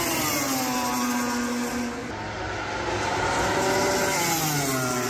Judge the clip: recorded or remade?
recorded